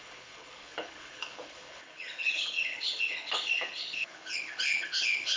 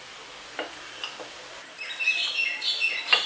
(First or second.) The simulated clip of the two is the first